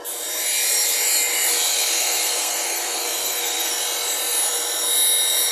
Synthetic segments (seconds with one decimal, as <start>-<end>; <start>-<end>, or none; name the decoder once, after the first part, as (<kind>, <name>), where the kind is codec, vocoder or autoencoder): 1.7-3.7 (codec, SNAC)